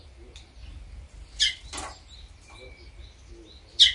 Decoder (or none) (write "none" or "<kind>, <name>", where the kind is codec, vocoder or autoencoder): none